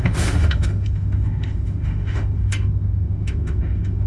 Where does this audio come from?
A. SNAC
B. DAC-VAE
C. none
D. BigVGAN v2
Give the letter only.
B